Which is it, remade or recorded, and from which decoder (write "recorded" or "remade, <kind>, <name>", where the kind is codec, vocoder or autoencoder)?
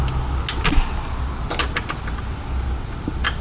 recorded